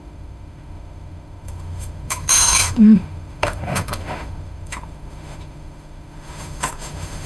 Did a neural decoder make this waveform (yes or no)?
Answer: yes